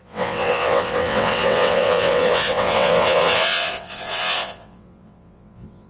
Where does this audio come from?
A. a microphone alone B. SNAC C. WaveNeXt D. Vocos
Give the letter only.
C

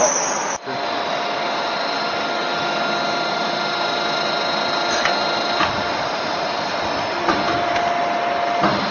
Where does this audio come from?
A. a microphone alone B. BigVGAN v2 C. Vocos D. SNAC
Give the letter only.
A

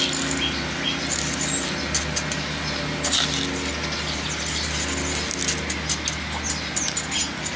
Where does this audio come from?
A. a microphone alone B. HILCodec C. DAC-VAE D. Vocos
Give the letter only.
A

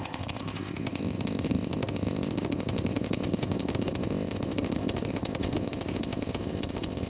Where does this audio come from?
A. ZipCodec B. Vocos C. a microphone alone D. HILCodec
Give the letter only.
A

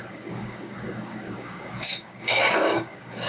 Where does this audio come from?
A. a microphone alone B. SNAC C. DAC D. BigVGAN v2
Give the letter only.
C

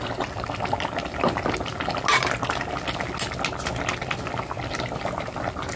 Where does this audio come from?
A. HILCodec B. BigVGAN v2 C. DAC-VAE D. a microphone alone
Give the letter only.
D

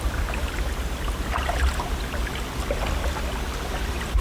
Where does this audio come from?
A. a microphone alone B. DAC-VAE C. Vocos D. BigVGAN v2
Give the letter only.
A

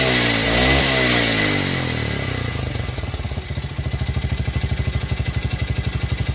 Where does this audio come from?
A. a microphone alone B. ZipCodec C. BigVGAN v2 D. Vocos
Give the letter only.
A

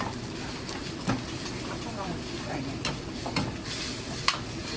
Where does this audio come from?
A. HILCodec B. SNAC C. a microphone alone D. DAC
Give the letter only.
C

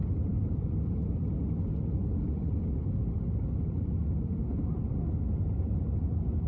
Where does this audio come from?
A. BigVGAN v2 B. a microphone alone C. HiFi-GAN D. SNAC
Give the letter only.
B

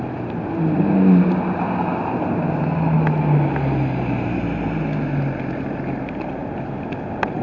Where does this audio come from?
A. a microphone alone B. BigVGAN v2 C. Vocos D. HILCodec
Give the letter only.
A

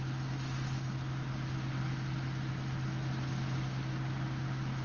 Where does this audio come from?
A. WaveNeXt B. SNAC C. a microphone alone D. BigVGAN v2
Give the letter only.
C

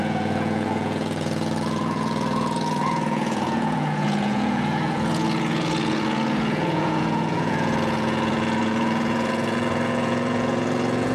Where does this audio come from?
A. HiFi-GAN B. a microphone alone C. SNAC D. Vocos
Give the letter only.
D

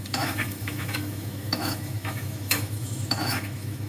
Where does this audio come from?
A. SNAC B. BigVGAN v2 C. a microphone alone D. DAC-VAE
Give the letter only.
D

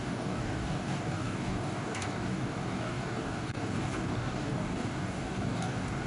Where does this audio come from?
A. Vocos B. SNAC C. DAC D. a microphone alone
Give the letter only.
C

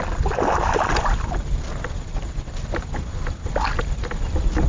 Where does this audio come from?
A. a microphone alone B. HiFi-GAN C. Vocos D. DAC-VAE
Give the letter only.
A